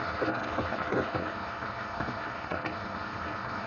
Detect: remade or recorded remade